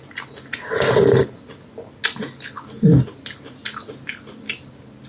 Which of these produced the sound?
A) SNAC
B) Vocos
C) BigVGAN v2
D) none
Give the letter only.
D